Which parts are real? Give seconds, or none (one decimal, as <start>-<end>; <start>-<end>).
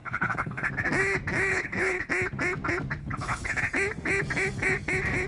0.7-1.5; 2.1-3.0; 3.6-5.3